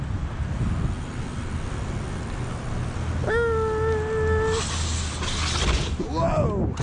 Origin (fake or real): real